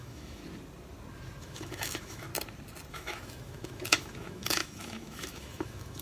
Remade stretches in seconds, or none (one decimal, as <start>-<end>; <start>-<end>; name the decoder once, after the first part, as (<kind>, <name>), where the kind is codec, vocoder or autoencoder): 0.0-0.4 (autoencoder, DAC-VAE); 1.4-2.3; 2.9-6.0